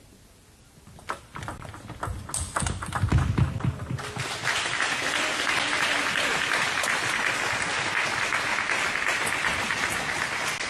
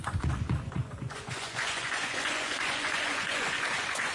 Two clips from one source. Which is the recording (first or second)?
first